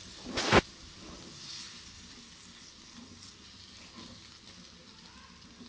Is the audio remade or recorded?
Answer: recorded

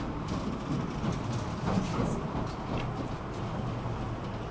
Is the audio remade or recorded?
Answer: recorded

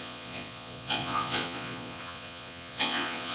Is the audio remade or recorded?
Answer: remade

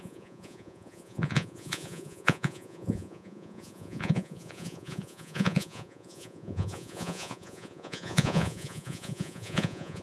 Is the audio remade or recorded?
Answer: remade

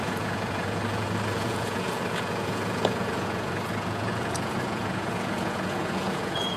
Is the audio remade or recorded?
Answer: remade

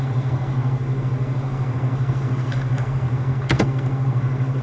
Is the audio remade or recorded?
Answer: remade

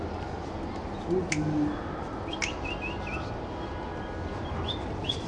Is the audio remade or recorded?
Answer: recorded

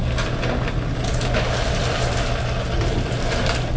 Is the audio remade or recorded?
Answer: recorded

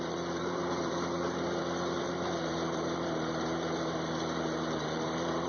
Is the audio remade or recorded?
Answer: remade